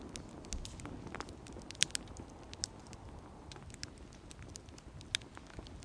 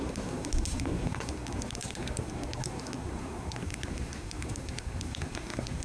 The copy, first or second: second